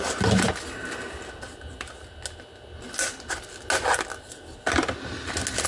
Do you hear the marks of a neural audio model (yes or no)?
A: no